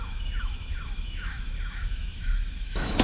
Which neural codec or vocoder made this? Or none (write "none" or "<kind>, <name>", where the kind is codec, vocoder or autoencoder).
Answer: autoencoder, DAC-VAE